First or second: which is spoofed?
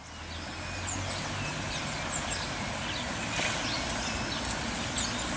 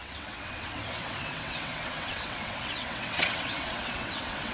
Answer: second